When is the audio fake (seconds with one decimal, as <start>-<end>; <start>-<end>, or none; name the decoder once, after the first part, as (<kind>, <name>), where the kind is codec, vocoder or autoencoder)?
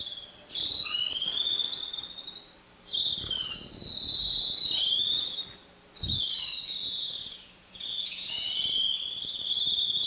6.8-8.5 (vocoder, Vocos)